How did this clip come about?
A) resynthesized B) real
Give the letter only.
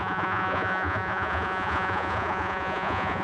A